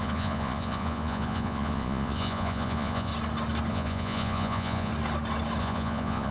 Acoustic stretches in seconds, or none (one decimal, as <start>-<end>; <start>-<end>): 3.1-3.7; 4.9-5.6